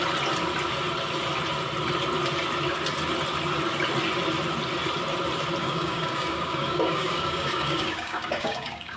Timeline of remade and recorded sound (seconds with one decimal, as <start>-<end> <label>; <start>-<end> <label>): 0.0-5.6 recorded; 5.6-9.0 remade